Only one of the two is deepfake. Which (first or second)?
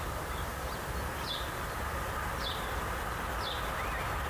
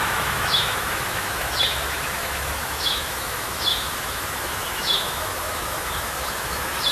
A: second